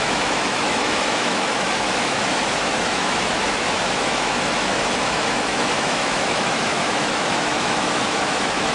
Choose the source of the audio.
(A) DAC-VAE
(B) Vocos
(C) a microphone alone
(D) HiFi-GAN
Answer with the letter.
A